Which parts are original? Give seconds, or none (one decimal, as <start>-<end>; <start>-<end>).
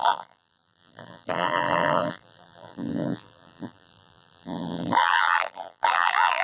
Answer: none